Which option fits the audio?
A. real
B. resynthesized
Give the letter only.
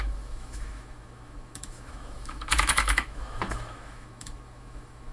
B